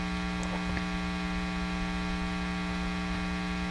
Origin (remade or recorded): recorded